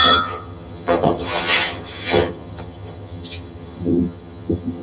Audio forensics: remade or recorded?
remade